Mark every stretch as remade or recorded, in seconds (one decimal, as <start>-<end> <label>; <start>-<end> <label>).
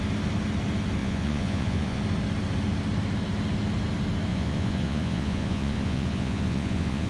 0.0-1.0 recorded; 1.0-2.0 remade; 2.0-4.3 recorded; 4.3-7.1 remade